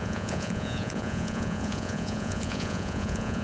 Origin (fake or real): fake